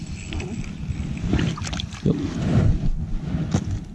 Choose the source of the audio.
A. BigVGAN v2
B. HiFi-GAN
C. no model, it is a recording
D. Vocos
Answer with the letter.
C